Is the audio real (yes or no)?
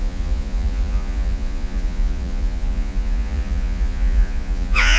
no